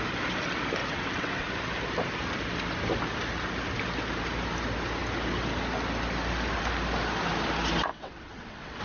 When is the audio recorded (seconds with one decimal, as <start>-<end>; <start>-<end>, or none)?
0.0-0.8; 1.5-7.9